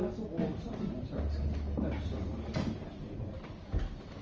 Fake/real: real